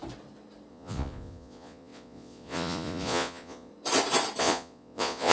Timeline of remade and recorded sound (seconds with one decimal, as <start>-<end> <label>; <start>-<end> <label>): 0.0-0.7 recorded; 0.7-3.7 remade; 3.7-4.4 recorded; 4.4-5.3 remade

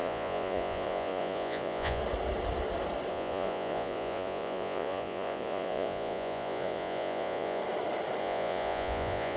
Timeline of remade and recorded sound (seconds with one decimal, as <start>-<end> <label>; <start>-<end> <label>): 0.0-2.0 remade; 2.0-3.1 recorded; 3.1-7.6 remade; 7.6-8.2 recorded; 8.2-9.4 remade

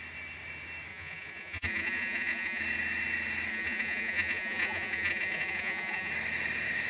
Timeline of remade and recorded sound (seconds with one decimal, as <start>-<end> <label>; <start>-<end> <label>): 0.0-0.9 recorded; 0.9-2.6 remade; 2.6-3.5 recorded; 3.5-6.1 remade; 6.1-6.9 recorded

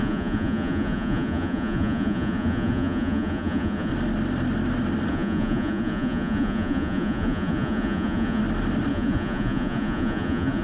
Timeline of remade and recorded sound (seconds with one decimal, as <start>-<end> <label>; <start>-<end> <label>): 0.0-3.9 remade; 3.9-5.1 recorded; 5.1-8.4 remade; 8.4-8.9 recorded; 8.9-10.6 remade